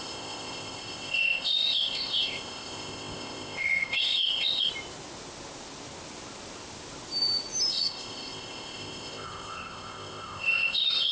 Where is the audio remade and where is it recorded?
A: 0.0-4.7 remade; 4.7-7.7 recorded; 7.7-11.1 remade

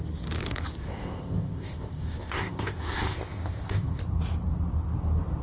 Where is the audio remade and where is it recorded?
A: 0.0-0.8 recorded; 0.8-4.0 remade; 4.0-5.4 recorded

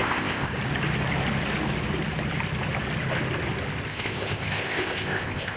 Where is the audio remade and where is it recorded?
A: 0.0-0.5 remade; 0.5-3.9 recorded; 3.9-5.6 remade

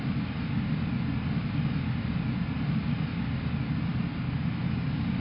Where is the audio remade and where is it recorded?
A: 0.0-5.2 recorded

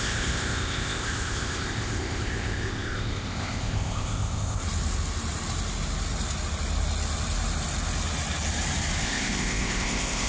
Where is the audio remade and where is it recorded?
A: 0.0-4.6 remade; 4.6-9.0 recorded; 9.0-10.3 remade

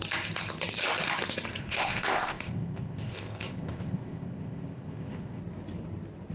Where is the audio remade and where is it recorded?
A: 0.0-1.6 recorded; 1.6-5.4 remade; 5.4-6.3 recorded

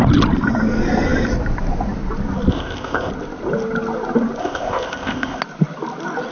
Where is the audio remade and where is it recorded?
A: 0.0-2.5 recorded; 2.5-3.1 remade; 3.1-4.4 recorded; 4.4-5.4 remade; 5.4-6.3 recorded

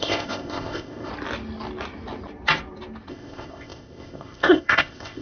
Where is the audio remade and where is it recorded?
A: 0.0-1.1 remade; 1.1-3.1 recorded; 3.1-5.2 remade